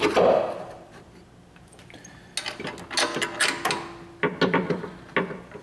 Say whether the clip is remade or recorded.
recorded